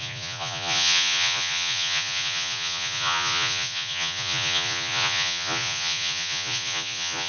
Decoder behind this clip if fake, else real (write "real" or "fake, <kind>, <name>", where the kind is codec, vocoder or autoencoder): fake, vocoder, Vocos